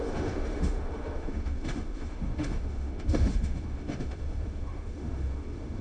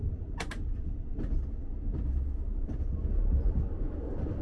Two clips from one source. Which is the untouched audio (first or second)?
second